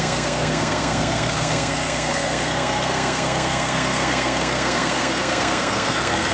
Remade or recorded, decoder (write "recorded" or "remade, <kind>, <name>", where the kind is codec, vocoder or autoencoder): remade, codec, SNAC